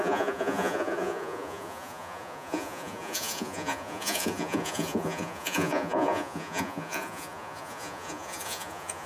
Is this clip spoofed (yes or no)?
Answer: yes